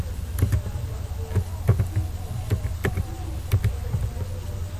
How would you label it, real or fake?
real